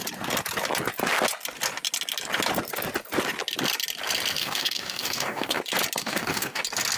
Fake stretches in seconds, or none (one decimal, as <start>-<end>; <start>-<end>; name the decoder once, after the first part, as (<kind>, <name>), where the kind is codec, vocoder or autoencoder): 4.4-5.6 (codec, DAC); 6.0-6.6